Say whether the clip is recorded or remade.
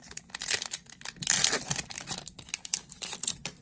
recorded